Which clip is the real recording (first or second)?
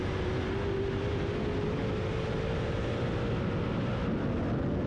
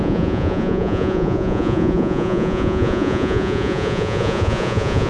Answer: first